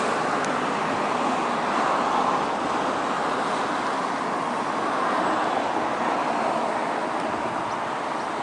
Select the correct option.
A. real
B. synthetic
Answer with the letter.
A